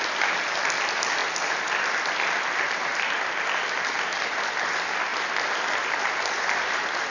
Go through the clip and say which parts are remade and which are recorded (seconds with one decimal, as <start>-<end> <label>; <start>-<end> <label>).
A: 0.0-7.1 recorded